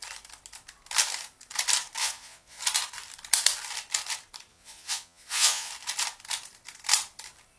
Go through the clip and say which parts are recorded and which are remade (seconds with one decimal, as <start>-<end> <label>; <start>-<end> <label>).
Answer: 0.0-2.0 recorded; 2.0-2.6 remade; 2.6-4.5 recorded; 4.5-5.7 remade; 5.7-7.6 recorded